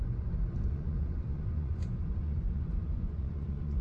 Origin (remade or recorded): remade